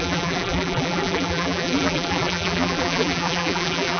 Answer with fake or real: fake